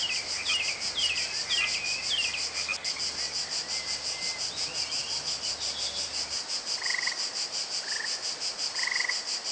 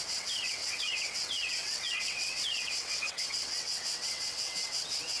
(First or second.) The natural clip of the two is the first